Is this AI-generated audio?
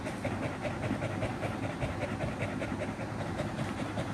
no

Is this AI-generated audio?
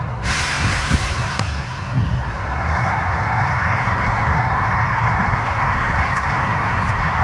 yes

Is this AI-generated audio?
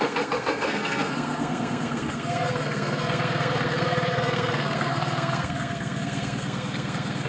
yes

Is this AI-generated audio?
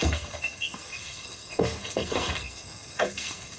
yes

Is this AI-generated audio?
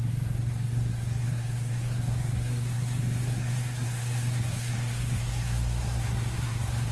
yes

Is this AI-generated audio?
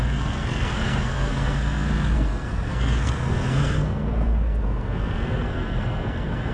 yes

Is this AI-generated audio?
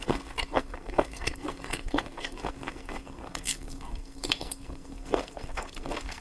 yes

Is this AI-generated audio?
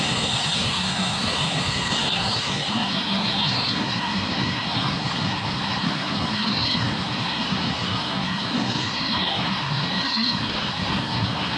yes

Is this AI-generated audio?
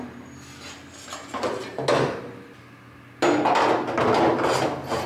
no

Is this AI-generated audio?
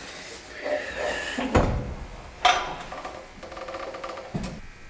no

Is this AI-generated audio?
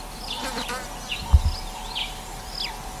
no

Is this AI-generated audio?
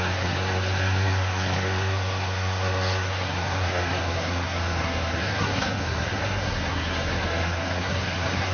yes